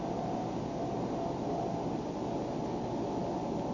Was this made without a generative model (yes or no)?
yes